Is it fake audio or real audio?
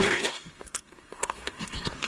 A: fake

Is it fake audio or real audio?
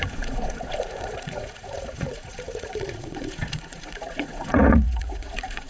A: fake